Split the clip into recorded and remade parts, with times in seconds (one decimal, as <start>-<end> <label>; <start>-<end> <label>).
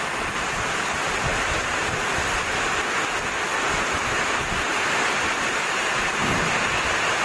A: 0.0-7.2 recorded